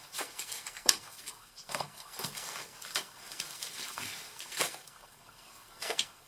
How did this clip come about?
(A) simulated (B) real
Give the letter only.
A